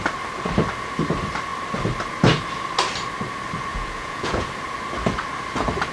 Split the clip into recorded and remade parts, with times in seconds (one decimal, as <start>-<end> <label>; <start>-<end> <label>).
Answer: 0.0-3.7 recorded; 3.7-4.5 remade; 4.5-5.9 recorded